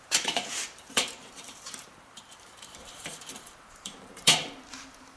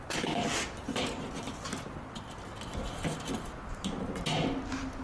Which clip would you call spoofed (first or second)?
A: first